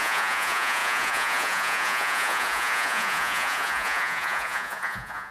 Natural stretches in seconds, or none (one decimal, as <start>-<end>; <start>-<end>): none